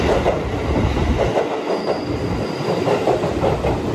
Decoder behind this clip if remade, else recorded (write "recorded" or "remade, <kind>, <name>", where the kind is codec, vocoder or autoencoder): recorded